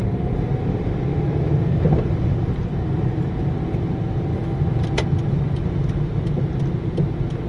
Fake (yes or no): no